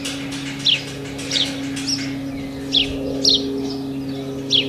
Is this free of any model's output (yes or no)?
yes